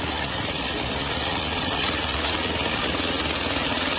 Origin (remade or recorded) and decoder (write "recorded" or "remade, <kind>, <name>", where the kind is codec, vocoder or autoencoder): remade, vocoder, Vocos